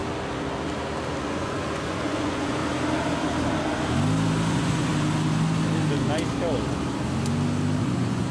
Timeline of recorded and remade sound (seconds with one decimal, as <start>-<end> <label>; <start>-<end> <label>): 0.0-1.2 recorded; 1.2-2.6 remade; 2.6-4.5 recorded; 4.5-4.9 remade; 4.9-7.8 recorded; 7.8-8.3 remade